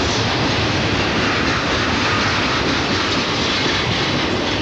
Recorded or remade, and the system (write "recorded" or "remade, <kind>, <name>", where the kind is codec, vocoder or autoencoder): recorded